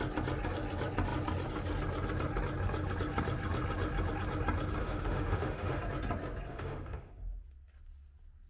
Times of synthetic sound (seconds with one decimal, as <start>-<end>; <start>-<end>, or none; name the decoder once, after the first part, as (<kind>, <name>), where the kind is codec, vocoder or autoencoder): 4.8-5.8 (autoencoder, DAC-VAE); 6.5-7.1